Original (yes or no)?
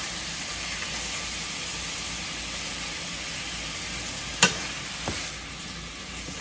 yes